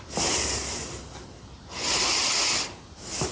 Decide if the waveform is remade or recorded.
recorded